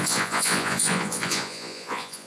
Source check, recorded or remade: remade